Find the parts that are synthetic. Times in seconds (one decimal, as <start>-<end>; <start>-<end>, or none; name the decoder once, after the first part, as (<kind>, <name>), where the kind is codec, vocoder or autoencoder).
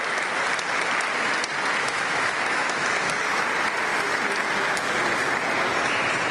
1.8-2.9 (autoencoder, DAC-VAE)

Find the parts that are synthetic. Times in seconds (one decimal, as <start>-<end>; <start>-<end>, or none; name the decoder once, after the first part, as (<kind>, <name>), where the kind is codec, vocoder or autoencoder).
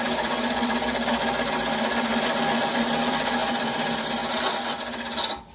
none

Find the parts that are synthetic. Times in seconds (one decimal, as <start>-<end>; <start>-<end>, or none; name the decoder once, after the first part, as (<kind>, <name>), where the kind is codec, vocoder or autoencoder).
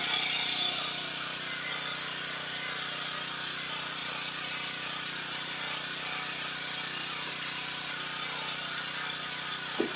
4.0-7.9 (vocoder, BigVGAN v2)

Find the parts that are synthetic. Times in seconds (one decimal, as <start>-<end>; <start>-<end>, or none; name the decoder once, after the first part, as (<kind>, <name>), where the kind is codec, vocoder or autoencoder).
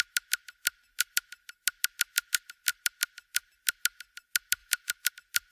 4.6-5.1 (vocoder, BigVGAN v2)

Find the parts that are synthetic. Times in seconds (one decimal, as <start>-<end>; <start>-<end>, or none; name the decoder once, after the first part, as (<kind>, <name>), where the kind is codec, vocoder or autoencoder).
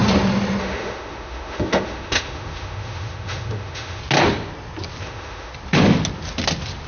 0.6-4.0 (autoencoder, DAC-VAE); 5.0-5.5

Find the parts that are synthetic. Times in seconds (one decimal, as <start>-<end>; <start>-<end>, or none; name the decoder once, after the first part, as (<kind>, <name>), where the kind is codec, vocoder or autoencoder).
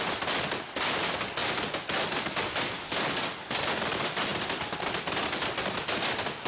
none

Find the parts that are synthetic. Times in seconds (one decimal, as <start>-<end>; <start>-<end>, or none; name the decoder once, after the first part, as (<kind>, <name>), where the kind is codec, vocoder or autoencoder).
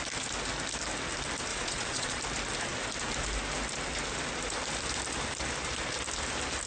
1.5-2.2 (vocoder, Vocos)